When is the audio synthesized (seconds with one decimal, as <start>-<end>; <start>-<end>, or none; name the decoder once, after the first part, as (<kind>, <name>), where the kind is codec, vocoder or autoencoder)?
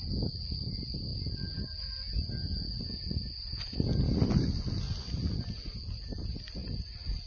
none